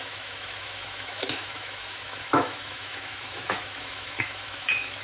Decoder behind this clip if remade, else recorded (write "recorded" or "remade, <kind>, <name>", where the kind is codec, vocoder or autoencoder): remade, autoencoder, DAC-VAE